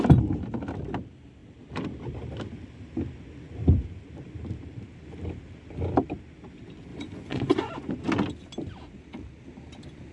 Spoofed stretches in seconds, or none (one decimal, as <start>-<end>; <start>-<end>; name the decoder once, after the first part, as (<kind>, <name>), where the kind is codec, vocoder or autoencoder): 6.9-7.9 (vocoder, Vocos)